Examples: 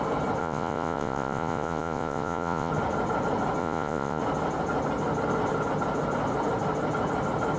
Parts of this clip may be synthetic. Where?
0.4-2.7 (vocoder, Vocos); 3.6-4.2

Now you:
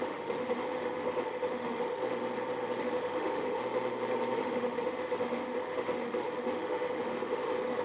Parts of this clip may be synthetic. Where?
0.0-2.0 (autoencoder, DAC-VAE); 2.8-3.6; 4.4-7.8

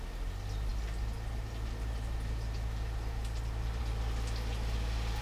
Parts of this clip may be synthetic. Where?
none

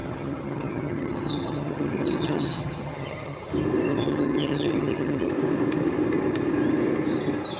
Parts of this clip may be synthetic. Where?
0.0-3.5 (vocoder, HiFi-GAN); 3.9-5.3

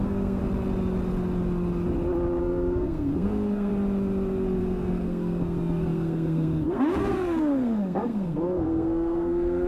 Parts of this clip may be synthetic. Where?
0.0-0.4 (codec, SNAC); 2.4-3.7; 4.6-9.7

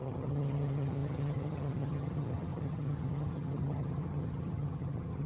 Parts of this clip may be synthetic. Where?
0.0-5.3 (vocoder, HiFi-GAN)

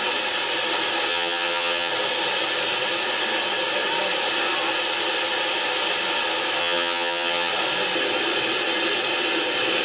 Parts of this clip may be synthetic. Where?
1.1-1.9 (vocoder, HiFi-GAN); 6.6-7.5

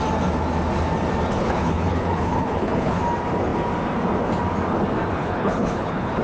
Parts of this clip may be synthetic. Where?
1.4-3.0 (codec, HILCodec); 5.2-6.2